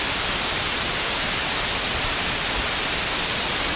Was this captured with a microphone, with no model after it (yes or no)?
yes